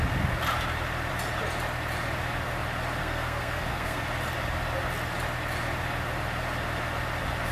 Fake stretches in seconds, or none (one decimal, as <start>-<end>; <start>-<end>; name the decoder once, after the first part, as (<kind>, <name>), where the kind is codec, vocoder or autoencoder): 3.0-4.0 (codec, SNAC)